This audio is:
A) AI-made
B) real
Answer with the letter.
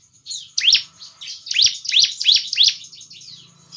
B